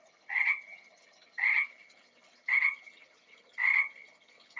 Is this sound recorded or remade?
remade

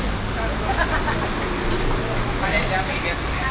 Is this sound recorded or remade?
recorded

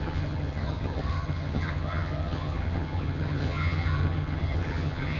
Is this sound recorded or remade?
remade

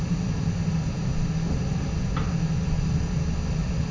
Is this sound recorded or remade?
recorded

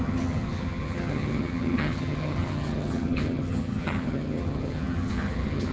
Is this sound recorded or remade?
remade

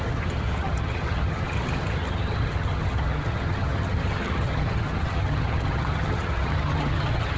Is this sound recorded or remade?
remade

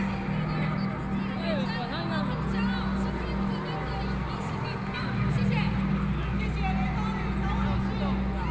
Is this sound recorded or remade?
recorded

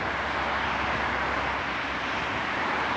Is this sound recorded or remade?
recorded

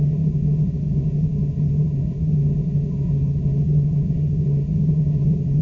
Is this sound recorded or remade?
remade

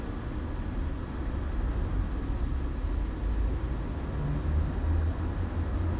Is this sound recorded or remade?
recorded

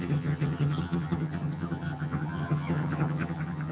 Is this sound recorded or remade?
remade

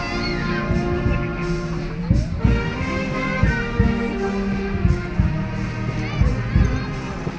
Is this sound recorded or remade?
recorded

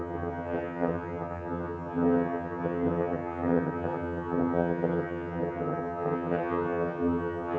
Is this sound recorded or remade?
remade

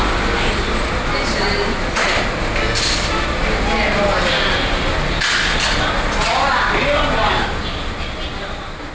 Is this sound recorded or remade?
recorded